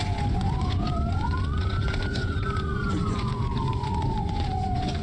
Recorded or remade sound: remade